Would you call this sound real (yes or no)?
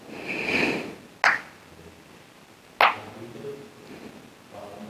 yes